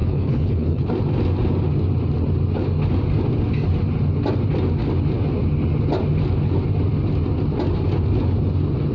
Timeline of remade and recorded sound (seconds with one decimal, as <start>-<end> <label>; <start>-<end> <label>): 0.0-0.9 remade; 0.9-8.9 recorded